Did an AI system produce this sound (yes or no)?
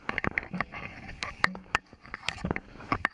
yes